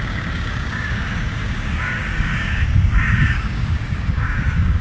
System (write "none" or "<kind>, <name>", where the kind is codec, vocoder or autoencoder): codec, DAC